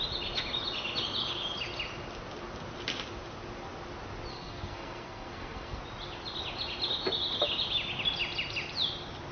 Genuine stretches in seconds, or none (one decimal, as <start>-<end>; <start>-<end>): 0.0-4.3; 5.8-9.3